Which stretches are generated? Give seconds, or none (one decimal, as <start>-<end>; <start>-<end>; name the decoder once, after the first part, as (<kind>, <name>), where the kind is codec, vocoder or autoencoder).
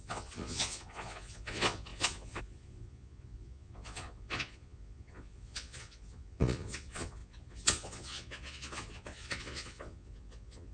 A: 0.0-10.7 (vocoder, Vocos)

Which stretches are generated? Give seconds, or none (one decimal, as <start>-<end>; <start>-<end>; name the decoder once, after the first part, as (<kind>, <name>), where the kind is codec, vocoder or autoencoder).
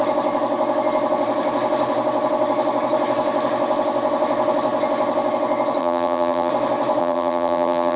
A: 5.8-6.5 (vocoder, BigVGAN v2); 7.0-8.0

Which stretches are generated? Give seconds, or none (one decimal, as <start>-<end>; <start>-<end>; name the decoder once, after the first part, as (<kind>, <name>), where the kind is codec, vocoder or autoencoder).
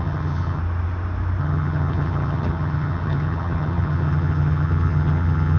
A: 0.0-0.6 (vocoder, HiFi-GAN); 1.4-5.6